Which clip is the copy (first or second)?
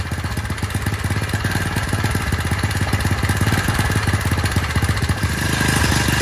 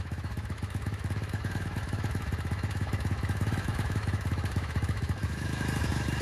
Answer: second